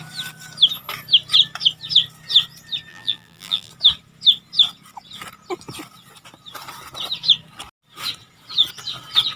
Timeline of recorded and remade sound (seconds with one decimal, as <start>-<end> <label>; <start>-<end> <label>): 0.0-2.9 recorded; 2.9-3.7 remade; 3.7-9.4 recorded